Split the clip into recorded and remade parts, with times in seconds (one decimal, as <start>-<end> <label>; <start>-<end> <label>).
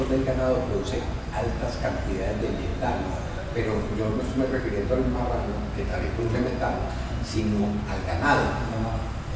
0.0-0.6 recorded; 0.6-1.5 remade; 1.5-2.7 recorded; 2.7-4.6 remade; 4.6-5.9 recorded; 5.9-7.4 remade; 7.4-9.4 recorded